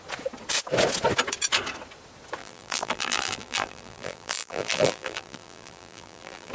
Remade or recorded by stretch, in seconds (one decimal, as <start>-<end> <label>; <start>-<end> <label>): 0.0-2.4 recorded; 2.4-6.5 remade